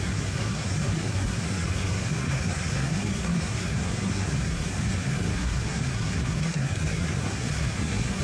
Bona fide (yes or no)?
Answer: no